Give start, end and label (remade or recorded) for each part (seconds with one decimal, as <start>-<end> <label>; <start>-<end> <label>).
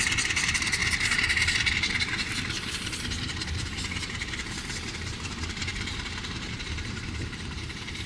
0.0-0.8 remade; 0.8-1.7 recorded; 1.7-8.1 remade